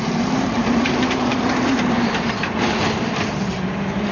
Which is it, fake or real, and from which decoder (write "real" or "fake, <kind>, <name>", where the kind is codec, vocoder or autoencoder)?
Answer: fake, vocoder, BigVGAN v2